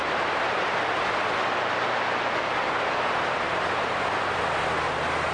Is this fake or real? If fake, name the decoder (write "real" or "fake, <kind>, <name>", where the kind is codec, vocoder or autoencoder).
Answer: real